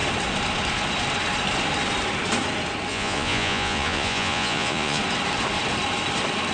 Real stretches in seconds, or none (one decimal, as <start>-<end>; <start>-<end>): 0.0-2.9; 5.0-6.5